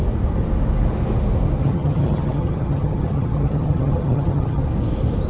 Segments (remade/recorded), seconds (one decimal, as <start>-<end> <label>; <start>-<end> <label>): 0.0-1.6 recorded; 1.6-4.6 remade; 4.6-5.3 recorded